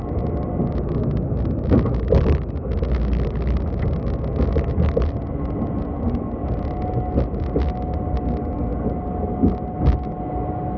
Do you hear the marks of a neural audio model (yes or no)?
no